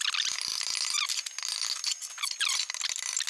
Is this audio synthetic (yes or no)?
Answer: no